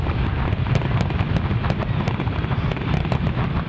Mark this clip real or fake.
real